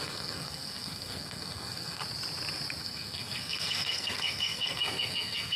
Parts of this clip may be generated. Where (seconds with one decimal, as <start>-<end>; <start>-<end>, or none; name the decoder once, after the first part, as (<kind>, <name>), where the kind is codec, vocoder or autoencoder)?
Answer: 0.0-2.0 (codec, SNAC); 2.8-5.6